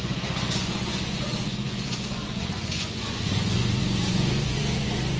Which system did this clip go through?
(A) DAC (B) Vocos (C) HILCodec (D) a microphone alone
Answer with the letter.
B